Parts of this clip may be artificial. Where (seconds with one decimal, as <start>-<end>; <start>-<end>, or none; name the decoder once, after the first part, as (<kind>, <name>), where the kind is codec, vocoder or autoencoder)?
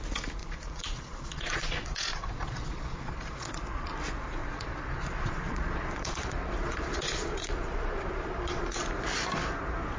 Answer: 0.4-3.9 (vocoder, Vocos); 4.4-8.9